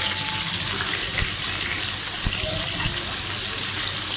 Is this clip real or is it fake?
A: real